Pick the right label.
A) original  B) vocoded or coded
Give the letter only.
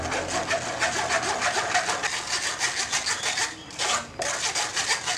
A